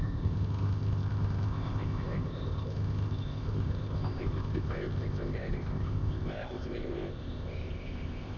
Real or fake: fake